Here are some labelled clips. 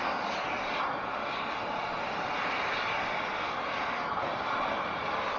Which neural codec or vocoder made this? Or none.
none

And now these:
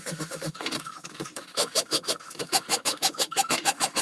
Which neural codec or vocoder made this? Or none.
autoencoder, DAC-VAE